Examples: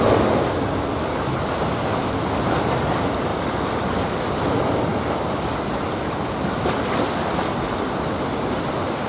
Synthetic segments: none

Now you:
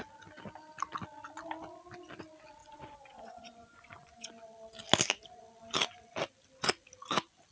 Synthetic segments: 2.6-4.3 (vocoder, Vocos)

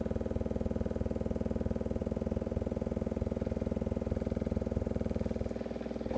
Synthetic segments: 2.0-4.9 (vocoder, BigVGAN v2)